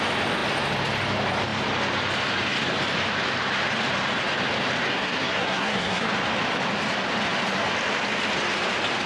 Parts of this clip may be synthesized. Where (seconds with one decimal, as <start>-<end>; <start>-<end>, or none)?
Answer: 4.9-6.1

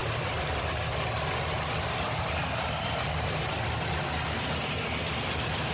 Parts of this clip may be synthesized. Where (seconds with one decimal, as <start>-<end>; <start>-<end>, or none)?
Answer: none

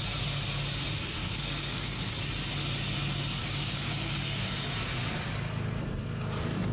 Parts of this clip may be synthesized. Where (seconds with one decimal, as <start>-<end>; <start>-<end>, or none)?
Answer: 1.2-2.1; 3.4-5.2

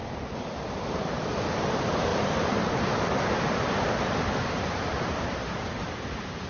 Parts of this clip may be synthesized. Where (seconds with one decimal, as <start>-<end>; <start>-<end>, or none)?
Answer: 0.9-5.4; 6.1-6.5

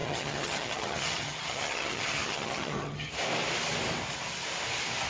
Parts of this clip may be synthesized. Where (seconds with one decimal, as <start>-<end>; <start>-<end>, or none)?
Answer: 0.0-3.1

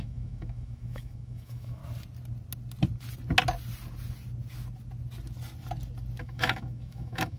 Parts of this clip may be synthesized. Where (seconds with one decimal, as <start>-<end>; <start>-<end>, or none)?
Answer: 0.0-1.8; 6.2-7.4

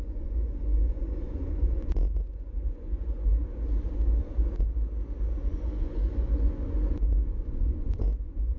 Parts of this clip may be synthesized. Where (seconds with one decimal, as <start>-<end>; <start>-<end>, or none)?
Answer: 0.0-3.3; 5.4-8.6